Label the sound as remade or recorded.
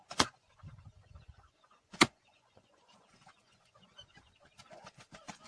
remade